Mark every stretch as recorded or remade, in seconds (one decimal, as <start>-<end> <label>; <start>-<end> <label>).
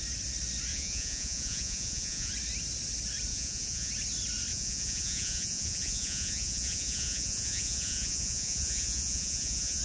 0.0-0.7 recorded; 0.7-2.3 remade; 2.3-3.3 recorded; 3.3-3.9 remade; 3.9-4.5 recorded; 4.5-9.8 remade